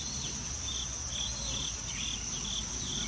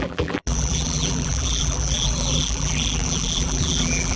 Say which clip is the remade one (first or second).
second